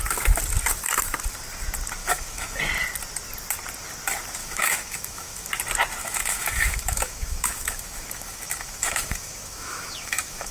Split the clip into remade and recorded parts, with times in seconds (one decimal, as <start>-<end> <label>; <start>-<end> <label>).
0.0-2.0 recorded; 2.0-2.6 remade; 2.6-4.4 recorded; 4.4-5.5 remade; 5.5-6.0 recorded; 6.0-10.5 remade